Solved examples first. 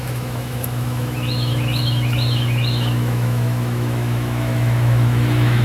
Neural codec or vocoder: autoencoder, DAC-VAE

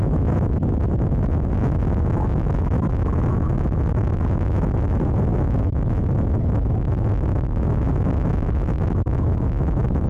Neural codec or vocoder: autoencoder, DAC-VAE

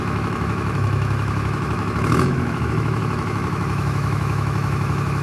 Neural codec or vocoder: autoencoder, DAC-VAE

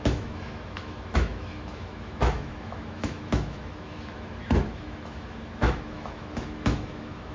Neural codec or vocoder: autoencoder, DAC-VAE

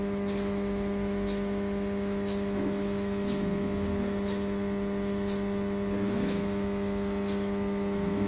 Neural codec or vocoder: autoencoder, DAC-VAE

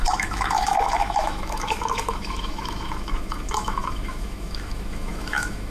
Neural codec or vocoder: autoencoder, DAC-VAE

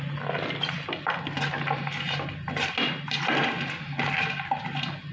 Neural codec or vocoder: none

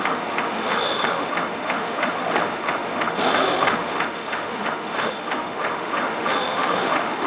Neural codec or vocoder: autoencoder, DAC-VAE